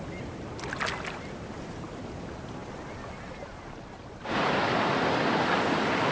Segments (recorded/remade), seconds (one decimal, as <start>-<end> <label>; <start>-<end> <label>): 0.0-6.1 recorded